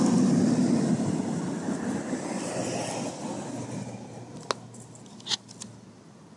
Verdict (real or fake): real